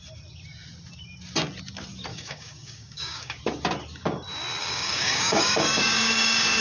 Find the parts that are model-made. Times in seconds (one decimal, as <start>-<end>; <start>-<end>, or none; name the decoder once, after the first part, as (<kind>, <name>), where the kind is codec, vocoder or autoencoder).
2.1-3.4 (codec, DAC); 4.6-6.6

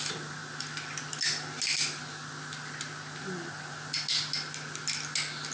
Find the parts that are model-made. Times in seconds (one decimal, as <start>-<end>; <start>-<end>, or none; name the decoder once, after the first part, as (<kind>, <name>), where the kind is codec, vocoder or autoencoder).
none

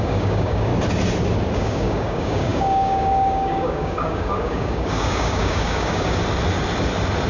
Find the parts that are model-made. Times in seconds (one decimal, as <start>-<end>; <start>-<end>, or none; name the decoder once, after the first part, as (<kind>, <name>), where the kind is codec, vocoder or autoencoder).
0.0-0.7 (codec, DAC); 1.5-6.2

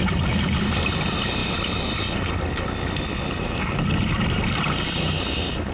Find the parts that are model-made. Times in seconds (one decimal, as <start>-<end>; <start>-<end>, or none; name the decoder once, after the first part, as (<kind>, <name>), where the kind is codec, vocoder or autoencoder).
none

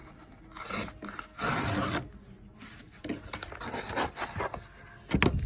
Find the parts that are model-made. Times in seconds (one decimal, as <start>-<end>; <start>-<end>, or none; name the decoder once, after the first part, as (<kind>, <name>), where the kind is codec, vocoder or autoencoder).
none

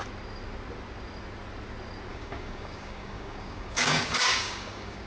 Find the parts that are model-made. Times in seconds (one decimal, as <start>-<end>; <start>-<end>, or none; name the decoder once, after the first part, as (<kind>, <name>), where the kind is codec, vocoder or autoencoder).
2.1-5.1 (codec, DAC)